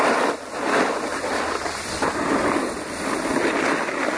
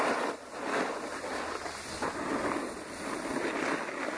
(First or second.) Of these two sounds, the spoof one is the first